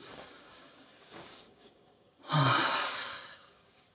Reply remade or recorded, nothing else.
remade